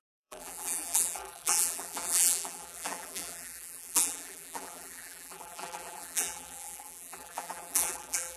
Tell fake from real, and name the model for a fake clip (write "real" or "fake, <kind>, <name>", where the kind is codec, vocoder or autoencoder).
fake, vocoder, BigVGAN v2